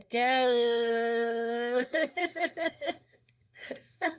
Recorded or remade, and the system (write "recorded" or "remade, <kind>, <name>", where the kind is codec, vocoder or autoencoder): remade, codec, SNAC